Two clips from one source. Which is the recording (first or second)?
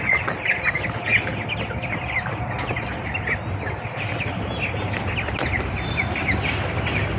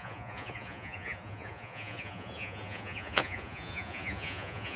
first